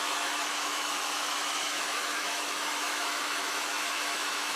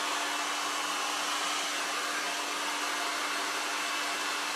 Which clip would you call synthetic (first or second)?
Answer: first